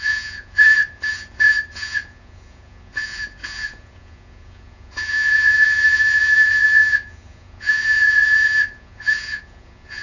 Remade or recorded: remade